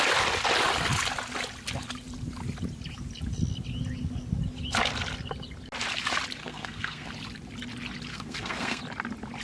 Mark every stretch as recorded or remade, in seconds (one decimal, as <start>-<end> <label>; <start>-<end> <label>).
0.0-6.4 recorded; 6.4-7.1 remade; 7.1-8.1 recorded; 8.1-8.8 remade; 8.8-9.4 recorded